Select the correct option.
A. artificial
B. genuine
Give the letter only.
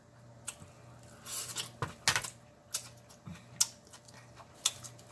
B